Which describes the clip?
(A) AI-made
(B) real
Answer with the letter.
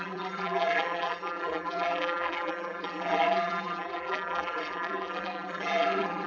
A